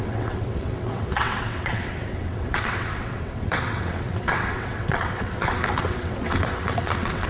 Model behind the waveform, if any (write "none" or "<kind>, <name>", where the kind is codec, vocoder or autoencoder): vocoder, WaveNeXt